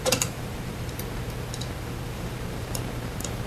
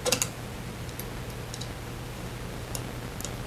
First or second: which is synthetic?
first